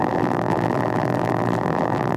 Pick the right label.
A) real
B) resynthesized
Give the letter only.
B